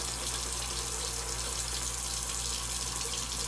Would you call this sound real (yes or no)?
yes